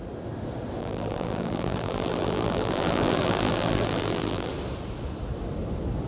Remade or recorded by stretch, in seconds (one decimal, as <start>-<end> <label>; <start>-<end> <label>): 0.0-0.8 recorded; 0.8-4.5 remade; 4.5-6.1 recorded